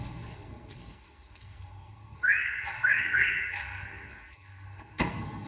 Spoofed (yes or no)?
yes